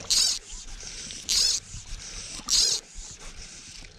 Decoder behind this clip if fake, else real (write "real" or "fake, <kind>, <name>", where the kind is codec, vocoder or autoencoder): real